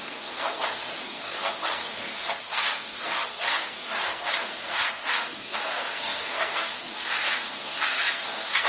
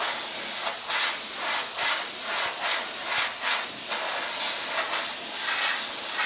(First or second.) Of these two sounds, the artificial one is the first